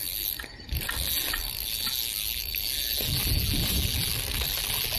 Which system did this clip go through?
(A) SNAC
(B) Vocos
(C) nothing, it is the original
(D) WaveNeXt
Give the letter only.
C